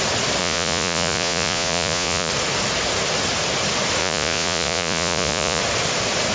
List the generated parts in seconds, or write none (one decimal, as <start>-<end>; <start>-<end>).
0.4-2.3; 4.0-5.6